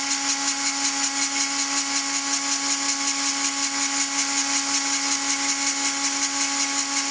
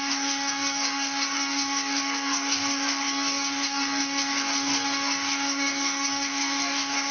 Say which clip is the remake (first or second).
second